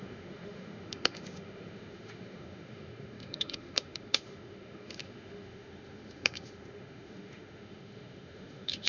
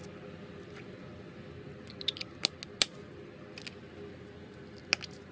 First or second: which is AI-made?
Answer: first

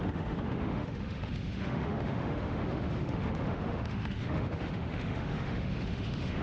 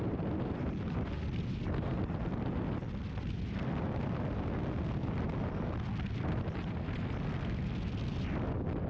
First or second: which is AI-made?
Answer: first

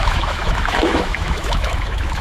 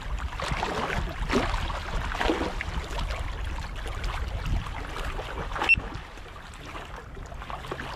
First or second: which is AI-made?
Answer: first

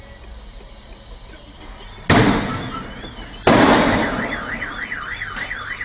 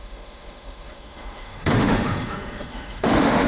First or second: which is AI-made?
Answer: second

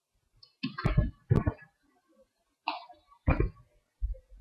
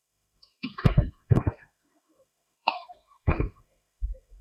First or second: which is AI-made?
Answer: second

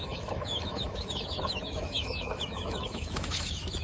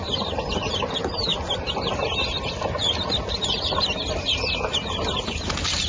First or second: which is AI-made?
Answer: first